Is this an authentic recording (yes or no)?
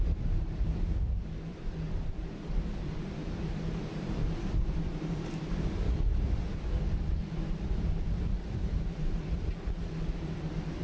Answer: no